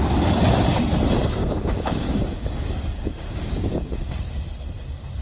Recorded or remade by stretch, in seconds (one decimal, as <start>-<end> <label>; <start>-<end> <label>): 0.0-1.4 recorded; 1.4-4.3 remade; 4.3-5.2 recorded